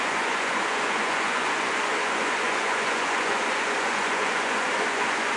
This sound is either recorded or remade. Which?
remade